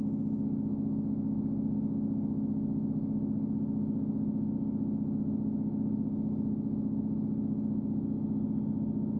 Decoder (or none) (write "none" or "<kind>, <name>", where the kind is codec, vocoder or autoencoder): none